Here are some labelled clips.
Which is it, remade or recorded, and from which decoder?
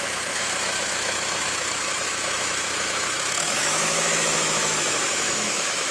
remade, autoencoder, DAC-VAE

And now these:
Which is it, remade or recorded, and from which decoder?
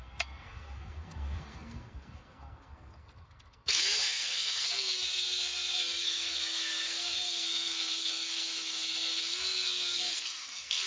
remade, codec, SNAC